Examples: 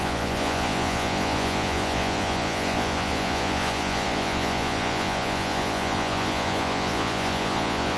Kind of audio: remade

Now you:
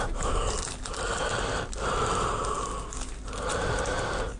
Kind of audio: recorded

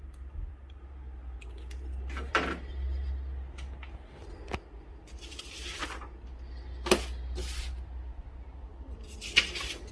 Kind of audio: recorded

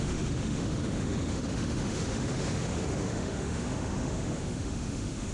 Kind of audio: remade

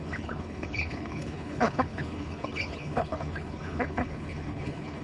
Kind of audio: remade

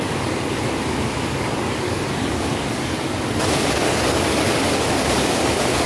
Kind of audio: remade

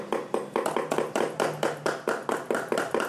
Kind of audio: recorded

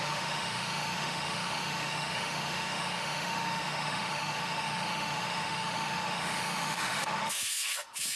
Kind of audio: remade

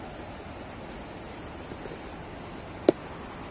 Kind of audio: recorded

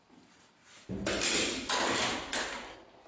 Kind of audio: recorded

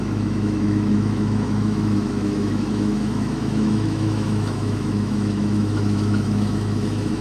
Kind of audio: remade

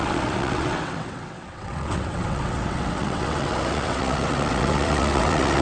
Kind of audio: remade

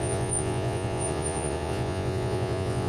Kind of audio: remade